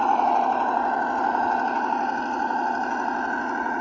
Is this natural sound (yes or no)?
yes